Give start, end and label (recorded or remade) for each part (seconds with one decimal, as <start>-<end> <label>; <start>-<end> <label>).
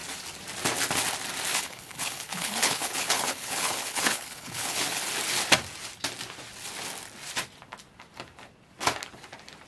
0.0-1.5 recorded; 1.5-5.0 remade; 5.0-9.7 recorded